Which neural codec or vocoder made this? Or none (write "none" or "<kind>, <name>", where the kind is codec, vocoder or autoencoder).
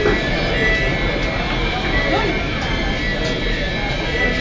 none